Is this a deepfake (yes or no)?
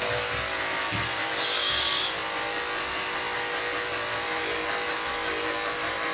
no